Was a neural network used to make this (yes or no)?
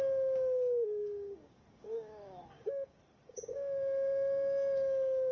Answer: yes